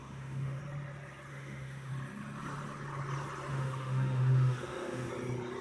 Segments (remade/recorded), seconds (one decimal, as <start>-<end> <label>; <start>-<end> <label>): 0.0-0.6 remade; 0.6-1.3 recorded; 1.3-1.9 remade; 1.9-3.5 recorded; 3.5-5.1 remade; 5.1-5.6 recorded